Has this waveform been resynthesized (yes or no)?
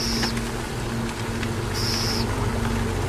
no